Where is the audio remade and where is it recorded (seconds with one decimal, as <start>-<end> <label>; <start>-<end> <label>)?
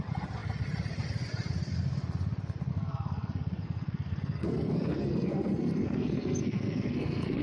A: 0.0-2.7 recorded; 2.7-7.4 remade